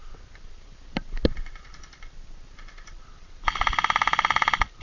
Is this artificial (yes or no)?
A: yes